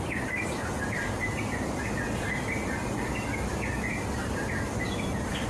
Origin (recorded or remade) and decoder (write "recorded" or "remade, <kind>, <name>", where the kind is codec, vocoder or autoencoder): recorded